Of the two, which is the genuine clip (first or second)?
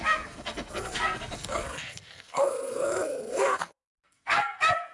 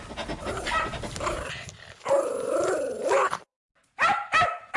second